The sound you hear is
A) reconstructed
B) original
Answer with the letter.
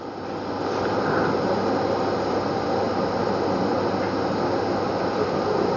B